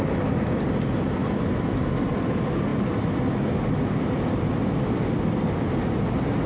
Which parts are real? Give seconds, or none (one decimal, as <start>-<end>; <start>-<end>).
0.0-6.5